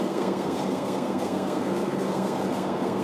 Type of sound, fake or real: fake